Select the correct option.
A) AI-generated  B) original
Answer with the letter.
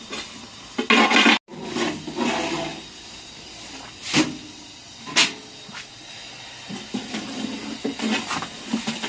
B